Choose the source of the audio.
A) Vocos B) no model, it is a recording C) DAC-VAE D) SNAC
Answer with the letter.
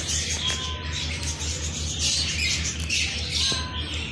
B